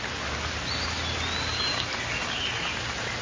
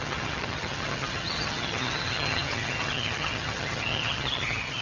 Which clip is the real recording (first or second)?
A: first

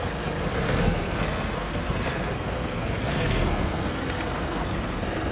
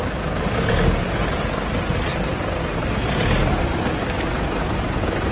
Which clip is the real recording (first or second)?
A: second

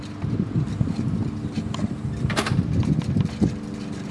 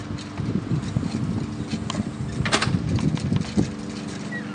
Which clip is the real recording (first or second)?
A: second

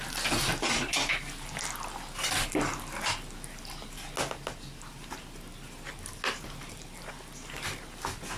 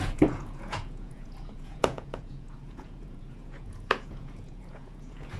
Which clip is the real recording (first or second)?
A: first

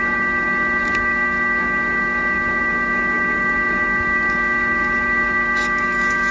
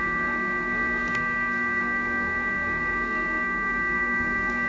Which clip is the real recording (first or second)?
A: first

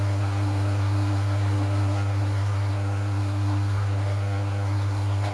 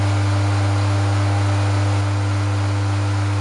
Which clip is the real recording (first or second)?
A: second